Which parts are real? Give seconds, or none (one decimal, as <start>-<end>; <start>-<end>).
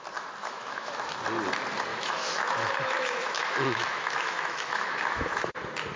0.0-0.4; 1.2-1.9; 5.5-6.0